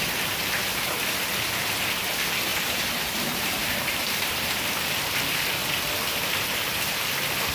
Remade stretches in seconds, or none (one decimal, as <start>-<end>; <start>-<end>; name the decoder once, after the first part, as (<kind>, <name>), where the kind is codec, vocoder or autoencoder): 2.5-4.9 (vocoder, BigVGAN v2)